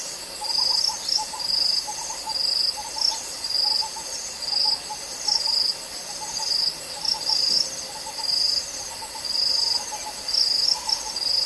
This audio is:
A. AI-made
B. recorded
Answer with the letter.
B